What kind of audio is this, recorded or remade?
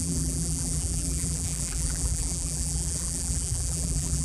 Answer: remade